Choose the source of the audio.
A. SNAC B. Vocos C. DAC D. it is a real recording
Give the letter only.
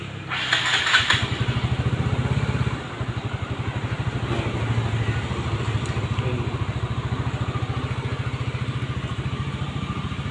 D